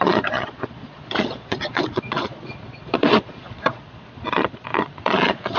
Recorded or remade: remade